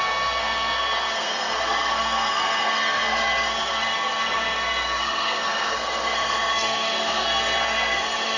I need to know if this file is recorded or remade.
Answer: remade